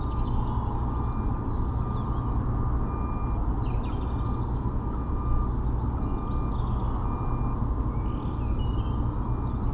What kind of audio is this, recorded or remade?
recorded